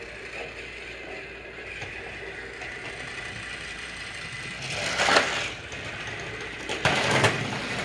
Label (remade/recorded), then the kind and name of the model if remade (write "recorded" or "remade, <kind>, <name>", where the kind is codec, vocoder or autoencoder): recorded